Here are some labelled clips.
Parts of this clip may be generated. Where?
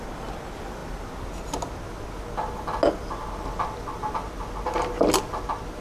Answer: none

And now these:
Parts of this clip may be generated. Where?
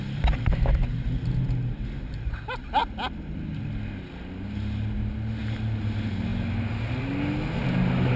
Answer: none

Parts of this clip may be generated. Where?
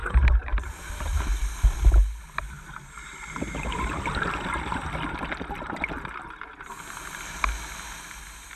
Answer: none